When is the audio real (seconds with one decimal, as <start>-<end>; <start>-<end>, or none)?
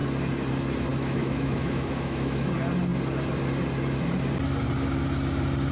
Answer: 0.0-0.9; 2.5-5.7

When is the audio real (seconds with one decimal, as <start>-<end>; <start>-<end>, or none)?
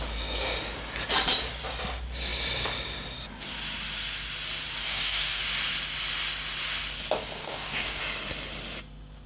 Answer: 0.0-4.8; 5.4-7.4; 8.0-9.3